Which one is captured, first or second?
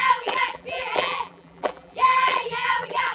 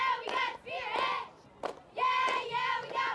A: second